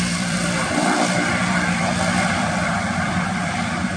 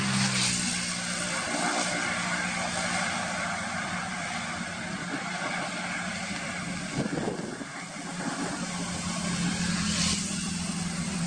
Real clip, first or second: second